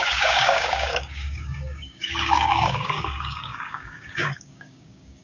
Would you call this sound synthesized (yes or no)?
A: yes